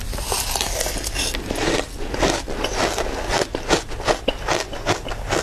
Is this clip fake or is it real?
real